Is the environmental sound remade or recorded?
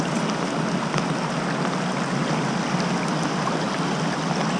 recorded